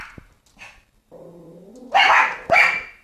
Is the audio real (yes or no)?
yes